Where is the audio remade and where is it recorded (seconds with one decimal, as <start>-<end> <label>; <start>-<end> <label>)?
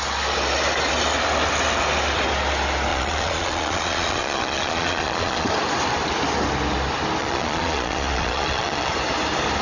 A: 0.0-2.9 recorded; 2.9-5.5 remade; 5.5-7.2 recorded; 7.2-8.9 remade; 8.9-9.6 recorded